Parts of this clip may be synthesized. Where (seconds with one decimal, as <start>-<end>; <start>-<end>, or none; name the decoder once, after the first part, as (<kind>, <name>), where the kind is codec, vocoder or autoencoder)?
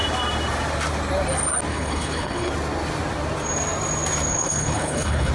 1.7-2.5 (codec, HILCodec); 4.3-5.3